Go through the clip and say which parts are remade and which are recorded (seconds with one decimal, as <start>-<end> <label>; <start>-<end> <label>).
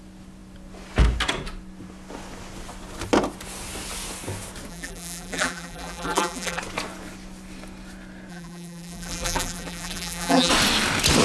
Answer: 0.0-4.7 recorded; 4.7-6.6 remade; 6.6-8.3 recorded; 8.3-10.5 remade; 10.5-11.2 recorded